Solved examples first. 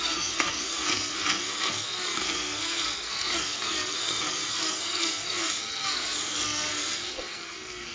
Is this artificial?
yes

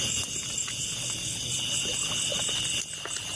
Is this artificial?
yes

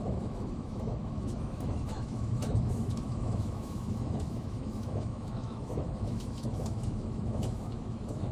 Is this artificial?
yes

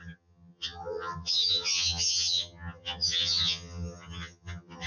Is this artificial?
yes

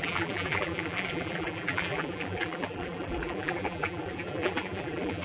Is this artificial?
yes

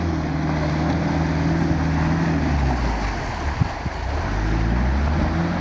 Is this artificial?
no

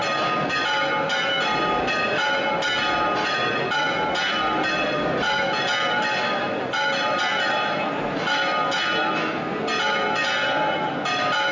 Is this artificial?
no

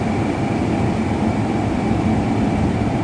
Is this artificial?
no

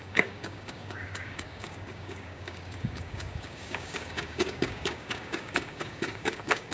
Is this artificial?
yes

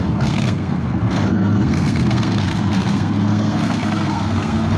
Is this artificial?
yes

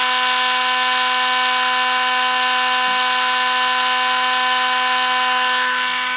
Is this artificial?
no